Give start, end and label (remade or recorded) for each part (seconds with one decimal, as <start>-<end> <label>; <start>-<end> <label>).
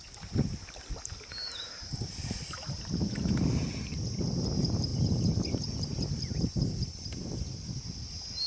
0.0-8.5 recorded